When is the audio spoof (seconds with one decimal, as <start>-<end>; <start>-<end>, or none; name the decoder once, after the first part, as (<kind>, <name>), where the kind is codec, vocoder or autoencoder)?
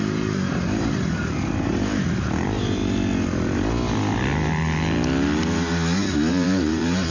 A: 0.0-2.8 (vocoder, BigVGAN v2); 6.3-7.1